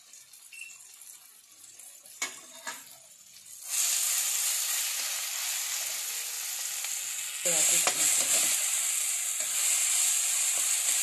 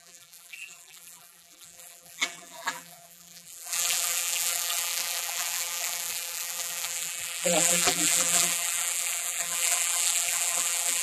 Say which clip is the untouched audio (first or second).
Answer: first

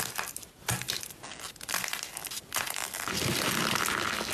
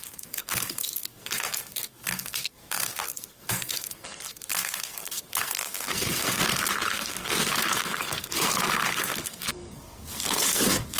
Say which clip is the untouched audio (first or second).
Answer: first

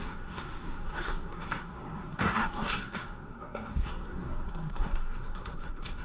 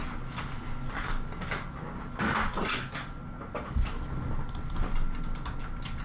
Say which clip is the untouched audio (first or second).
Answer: second